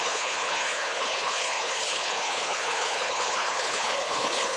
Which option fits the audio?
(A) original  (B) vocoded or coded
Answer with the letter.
B